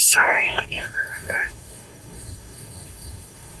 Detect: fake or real fake